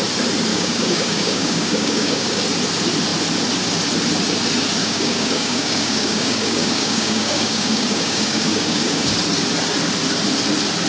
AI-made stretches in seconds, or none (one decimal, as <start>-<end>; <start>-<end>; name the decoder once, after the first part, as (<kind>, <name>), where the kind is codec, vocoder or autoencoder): 0.5-2.4 (codec, DAC); 4.8-9.1